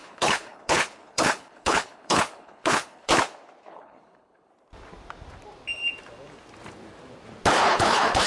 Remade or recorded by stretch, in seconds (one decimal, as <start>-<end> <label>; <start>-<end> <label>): 0.0-3.1 remade; 3.1-3.7 recorded; 3.7-4.5 remade; 4.5-7.6 recorded; 7.6-8.3 remade